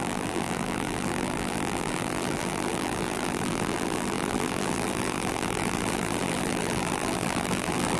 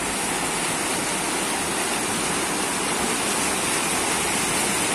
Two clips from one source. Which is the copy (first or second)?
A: first